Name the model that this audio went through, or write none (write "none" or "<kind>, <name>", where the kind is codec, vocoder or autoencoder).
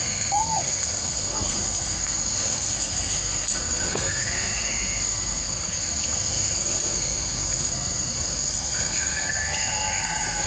codec, SNAC